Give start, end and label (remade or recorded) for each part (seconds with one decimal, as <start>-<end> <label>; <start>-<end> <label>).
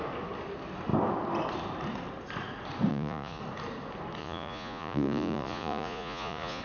0.0-2.9 recorded; 2.9-3.4 remade; 3.4-4.2 recorded; 4.2-6.6 remade